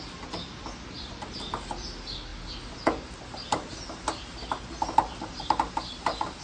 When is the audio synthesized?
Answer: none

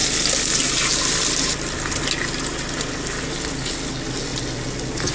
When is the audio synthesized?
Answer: none

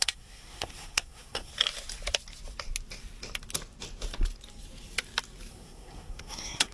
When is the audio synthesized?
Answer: 0.0-1.5 (codec, SNAC); 5.5-6.7